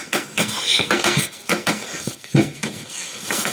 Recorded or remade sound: remade